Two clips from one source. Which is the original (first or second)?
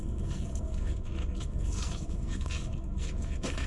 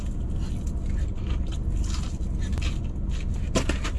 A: second